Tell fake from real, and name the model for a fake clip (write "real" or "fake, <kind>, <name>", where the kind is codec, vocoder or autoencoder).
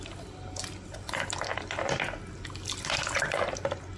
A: fake, vocoder, BigVGAN v2